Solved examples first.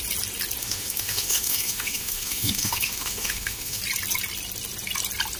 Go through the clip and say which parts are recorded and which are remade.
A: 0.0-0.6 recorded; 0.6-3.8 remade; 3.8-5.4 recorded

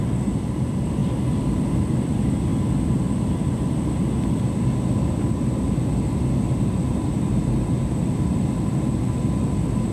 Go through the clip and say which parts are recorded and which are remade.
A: 0.0-9.9 recorded

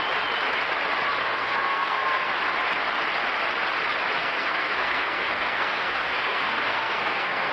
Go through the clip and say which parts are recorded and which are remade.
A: 0.0-1.2 recorded; 1.2-2.3 remade; 2.3-4.2 recorded; 4.2-7.5 remade

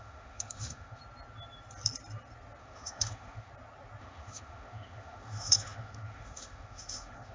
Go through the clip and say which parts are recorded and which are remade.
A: 0.0-1.0 remade; 1.0-2.6 recorded; 2.6-3.5 remade; 3.5-4.0 recorded; 4.0-7.3 remade

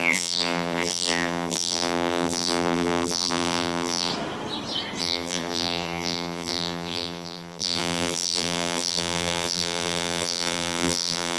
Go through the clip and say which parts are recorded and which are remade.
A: 0.0-4.1 remade; 4.1-5.0 recorded; 5.0-11.4 remade

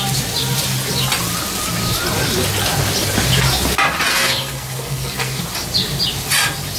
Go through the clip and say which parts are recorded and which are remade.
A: 0.0-4.1 recorded; 4.1-5.4 remade; 5.4-6.8 recorded